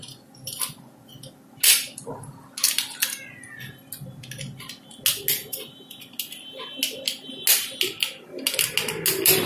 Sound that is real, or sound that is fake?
real